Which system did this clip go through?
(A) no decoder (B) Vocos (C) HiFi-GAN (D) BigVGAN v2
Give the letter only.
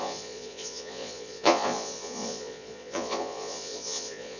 B